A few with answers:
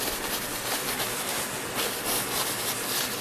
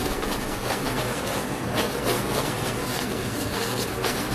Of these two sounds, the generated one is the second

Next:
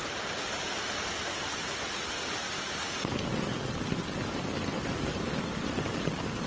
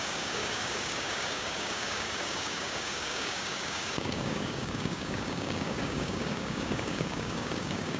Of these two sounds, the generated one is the second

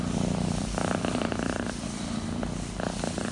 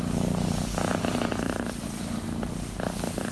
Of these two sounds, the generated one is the first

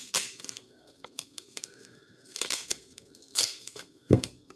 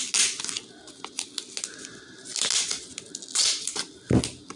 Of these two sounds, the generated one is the first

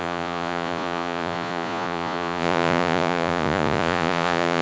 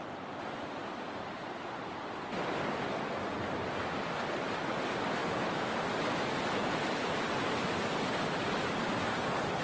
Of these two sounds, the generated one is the first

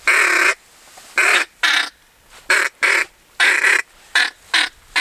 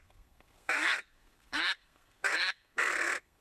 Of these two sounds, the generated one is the second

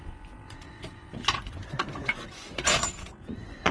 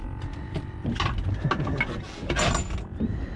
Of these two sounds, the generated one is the first